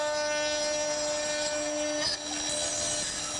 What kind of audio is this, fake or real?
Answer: real